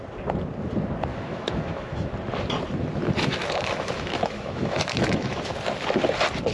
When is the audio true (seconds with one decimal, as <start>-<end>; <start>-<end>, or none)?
0.0-1.1; 2.1-3.4; 5.5-6.5